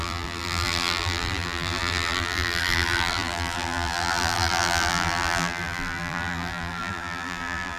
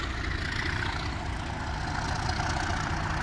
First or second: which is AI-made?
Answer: first